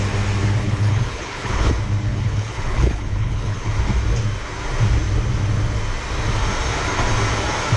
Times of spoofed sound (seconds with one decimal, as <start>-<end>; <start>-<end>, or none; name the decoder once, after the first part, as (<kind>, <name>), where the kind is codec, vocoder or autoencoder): 0.6-1.7 (codec, HILCodec); 2.1-3.7